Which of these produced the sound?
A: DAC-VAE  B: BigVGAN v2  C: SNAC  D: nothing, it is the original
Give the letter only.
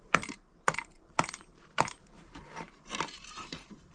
B